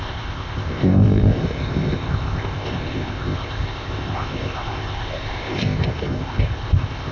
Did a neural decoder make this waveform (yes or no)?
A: yes